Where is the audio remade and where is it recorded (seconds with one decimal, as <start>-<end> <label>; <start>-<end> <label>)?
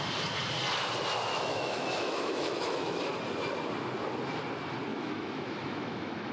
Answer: 0.0-1.3 recorded; 1.3-3.0 remade; 3.0-4.9 recorded; 4.9-6.3 remade